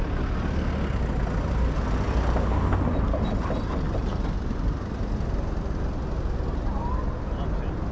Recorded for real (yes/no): yes